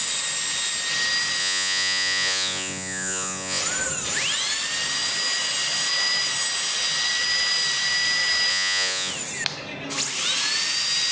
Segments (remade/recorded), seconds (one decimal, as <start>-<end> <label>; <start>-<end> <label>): 0.0-1.4 recorded; 1.4-3.6 remade; 3.6-8.5 recorded; 8.5-9.1 remade; 9.1-11.1 recorded